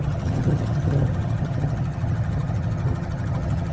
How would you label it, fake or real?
fake